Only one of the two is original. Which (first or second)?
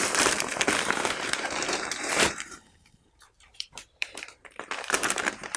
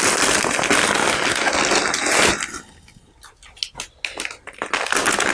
second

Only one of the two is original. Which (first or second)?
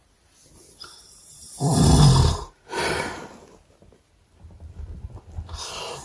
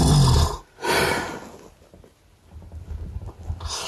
second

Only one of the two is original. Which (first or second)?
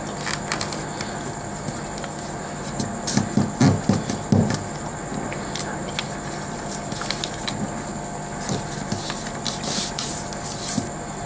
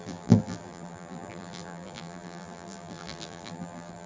first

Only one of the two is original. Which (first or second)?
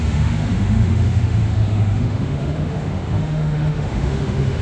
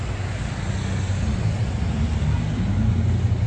second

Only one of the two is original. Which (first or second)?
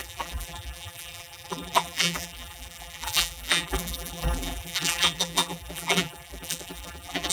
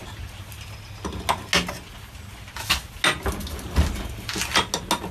second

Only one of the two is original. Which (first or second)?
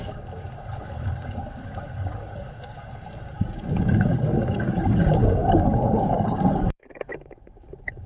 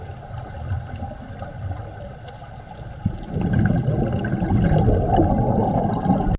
second